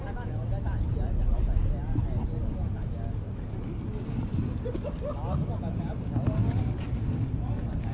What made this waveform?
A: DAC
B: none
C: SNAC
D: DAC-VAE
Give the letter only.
B